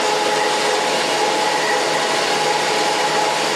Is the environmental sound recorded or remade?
recorded